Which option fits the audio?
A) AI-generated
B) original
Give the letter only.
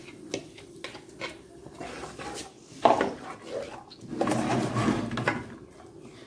B